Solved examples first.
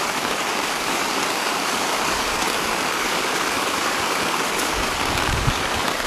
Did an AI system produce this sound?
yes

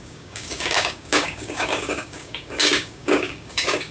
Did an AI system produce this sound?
yes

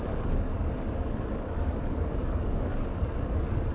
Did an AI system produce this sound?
yes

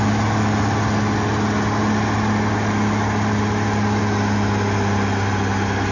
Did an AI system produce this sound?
no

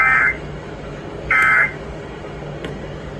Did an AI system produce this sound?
yes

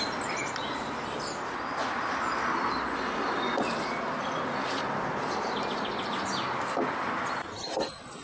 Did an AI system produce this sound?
no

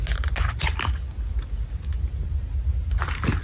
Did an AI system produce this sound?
no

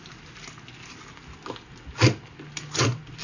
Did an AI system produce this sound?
no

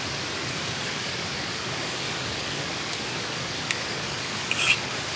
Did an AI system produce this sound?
yes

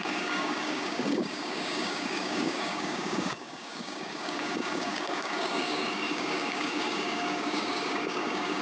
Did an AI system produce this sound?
yes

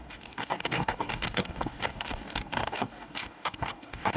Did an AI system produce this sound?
yes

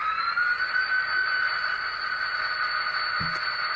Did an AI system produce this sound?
no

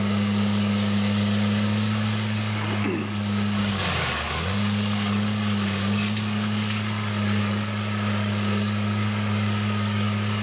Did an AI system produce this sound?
yes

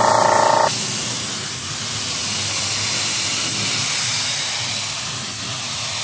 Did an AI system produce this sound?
no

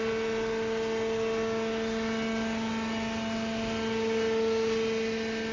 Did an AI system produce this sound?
no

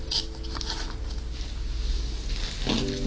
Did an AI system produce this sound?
no